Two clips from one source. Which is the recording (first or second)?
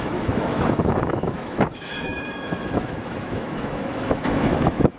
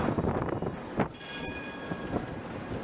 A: second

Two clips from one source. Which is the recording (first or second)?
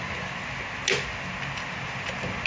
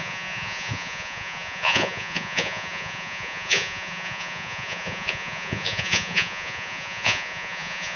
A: first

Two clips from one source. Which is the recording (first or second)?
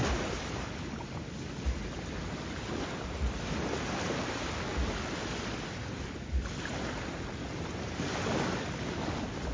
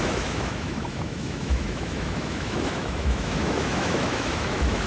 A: first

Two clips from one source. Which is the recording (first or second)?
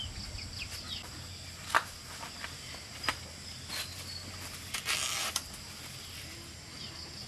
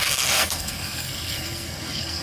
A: first